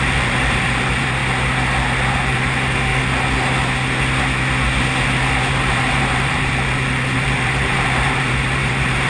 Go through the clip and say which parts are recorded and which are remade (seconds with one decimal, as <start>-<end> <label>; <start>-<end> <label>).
0.0-1.2 remade; 1.2-2.1 recorded; 2.1-2.9 remade; 2.9-5.5 recorded; 5.5-9.1 remade